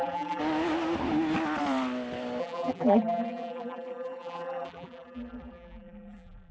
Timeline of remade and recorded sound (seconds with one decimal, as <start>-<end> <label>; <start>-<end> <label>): 0.0-0.4 remade; 0.4-2.4 recorded; 2.4-6.5 remade